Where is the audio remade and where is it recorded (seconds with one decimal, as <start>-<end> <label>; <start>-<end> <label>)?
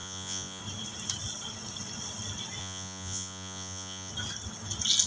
0.0-0.6 remade; 0.6-2.6 recorded; 2.6-4.1 remade; 4.1-5.1 recorded